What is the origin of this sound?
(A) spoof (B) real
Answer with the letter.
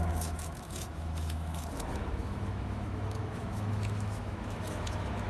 A